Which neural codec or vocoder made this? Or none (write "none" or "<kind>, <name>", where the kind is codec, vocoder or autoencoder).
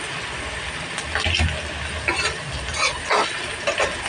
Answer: none